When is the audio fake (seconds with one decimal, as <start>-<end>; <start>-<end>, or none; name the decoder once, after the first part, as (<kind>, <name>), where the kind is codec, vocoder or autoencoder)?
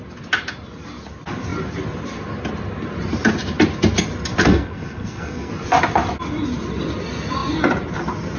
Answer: 4.5-5.5 (codec, SNAC)